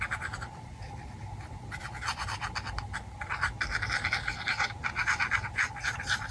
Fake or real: real